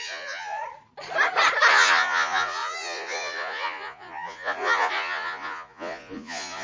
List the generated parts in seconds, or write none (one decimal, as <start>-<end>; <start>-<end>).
0.0-0.6; 1.7-6.6